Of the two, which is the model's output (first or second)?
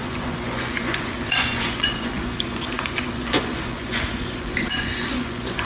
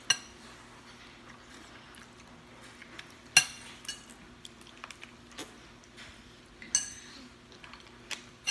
first